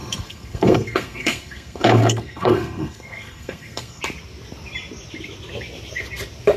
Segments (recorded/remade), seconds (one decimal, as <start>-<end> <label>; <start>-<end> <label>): 0.0-4.0 remade; 4.0-6.6 recorded